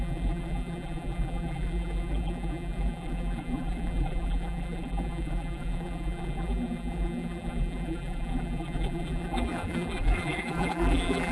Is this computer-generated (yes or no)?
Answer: yes